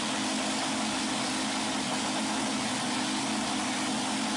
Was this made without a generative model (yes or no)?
yes